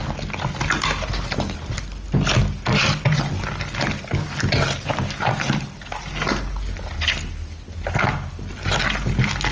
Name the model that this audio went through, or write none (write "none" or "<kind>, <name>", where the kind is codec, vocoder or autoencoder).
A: none